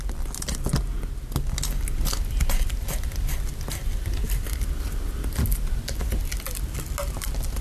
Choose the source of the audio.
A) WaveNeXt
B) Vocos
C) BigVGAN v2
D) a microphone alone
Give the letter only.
D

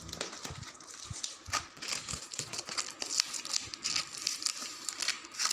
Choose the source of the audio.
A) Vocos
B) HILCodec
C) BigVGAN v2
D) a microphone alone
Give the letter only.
D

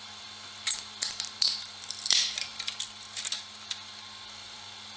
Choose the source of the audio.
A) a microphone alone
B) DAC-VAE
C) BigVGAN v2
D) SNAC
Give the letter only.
C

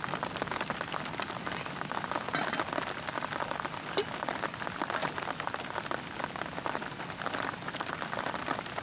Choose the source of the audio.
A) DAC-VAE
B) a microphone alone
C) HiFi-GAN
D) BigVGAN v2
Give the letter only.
B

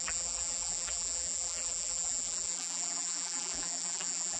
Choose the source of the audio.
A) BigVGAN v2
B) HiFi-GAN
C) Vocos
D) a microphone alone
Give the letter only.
A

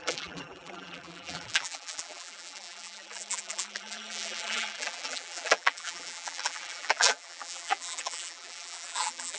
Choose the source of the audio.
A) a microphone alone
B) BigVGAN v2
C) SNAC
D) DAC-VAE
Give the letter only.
B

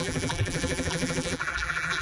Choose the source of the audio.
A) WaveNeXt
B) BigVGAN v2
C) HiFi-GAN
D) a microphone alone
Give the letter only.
B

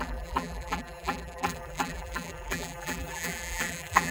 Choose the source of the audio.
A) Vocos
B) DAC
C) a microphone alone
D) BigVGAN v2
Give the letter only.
D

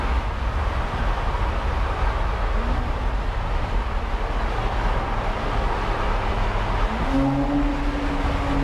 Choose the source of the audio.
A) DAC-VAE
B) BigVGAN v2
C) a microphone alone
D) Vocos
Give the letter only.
C